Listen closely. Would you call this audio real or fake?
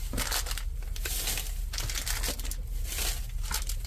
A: real